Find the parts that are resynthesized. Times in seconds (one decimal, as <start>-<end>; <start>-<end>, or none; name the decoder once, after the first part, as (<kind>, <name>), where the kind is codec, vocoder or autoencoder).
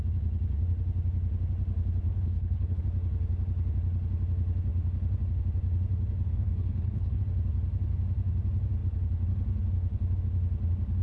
2.1-2.8 (codec, HILCodec); 6.3-7.2